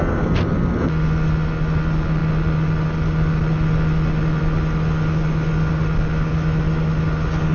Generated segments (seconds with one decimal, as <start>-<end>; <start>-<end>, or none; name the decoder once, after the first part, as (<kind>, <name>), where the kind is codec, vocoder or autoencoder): none

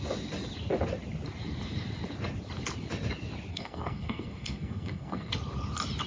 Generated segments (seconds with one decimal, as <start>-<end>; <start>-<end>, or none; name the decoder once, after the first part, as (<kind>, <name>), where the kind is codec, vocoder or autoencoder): 3.5-5.3 (codec, SNAC)

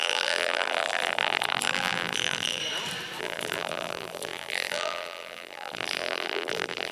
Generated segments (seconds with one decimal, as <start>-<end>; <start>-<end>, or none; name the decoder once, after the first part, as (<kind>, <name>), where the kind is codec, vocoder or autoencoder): 0.0-2.6 (vocoder, BigVGAN v2); 3.2-6.9

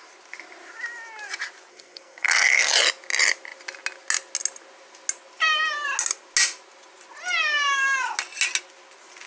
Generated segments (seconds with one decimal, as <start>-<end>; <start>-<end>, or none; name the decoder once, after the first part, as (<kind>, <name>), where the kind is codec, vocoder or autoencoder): 1.7-2.7 (codec, SNAC)